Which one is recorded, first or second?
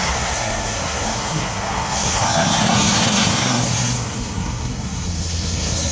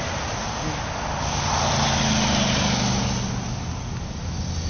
second